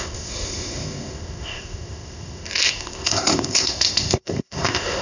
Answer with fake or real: fake